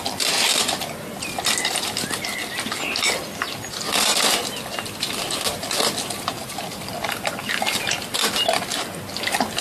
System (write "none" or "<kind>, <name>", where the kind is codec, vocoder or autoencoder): none